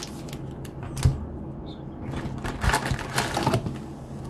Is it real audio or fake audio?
real